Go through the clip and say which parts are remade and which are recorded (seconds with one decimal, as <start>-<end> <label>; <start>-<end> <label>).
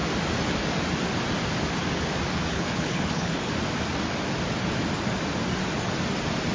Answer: 0.0-2.5 recorded; 2.5-3.5 remade; 3.5-6.5 recorded